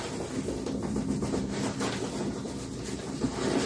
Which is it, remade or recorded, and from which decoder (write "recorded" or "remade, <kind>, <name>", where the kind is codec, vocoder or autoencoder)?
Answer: recorded